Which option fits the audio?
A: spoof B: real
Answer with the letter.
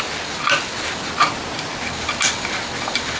B